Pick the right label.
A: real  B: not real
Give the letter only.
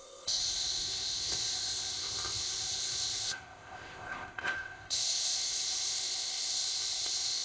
B